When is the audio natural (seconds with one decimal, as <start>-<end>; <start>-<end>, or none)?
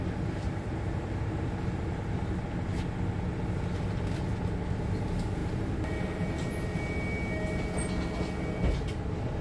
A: 0.0-9.4